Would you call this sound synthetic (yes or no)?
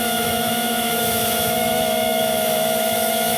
yes